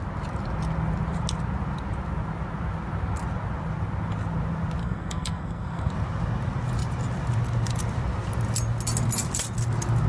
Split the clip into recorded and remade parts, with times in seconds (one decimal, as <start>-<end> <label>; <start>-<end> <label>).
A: 0.0-4.8 recorded; 4.8-5.9 remade; 5.9-10.1 recorded